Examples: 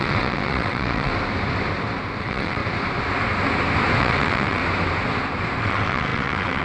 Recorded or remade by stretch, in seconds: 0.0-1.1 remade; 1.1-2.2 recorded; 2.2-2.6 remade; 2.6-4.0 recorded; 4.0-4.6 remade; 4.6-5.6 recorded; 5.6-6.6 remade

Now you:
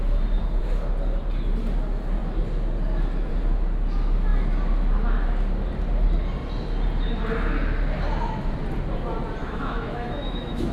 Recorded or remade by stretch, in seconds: 0.0-9.4 recorded; 9.4-10.7 remade

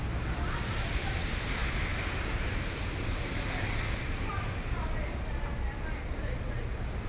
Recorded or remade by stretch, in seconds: 0.0-7.1 recorded

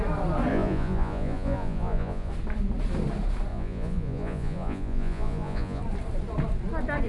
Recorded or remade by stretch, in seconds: 0.0-0.5 recorded; 0.5-2.3 remade; 2.3-3.5 recorded; 3.5-5.8 remade; 5.8-7.1 recorded

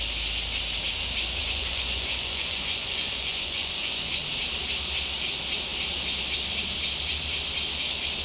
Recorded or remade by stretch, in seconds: 0.0-1.4 recorded; 1.4-4.2 remade; 4.2-8.2 recorded

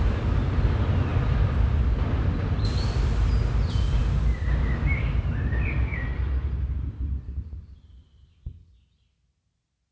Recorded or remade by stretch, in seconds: 0.0-9.9 recorded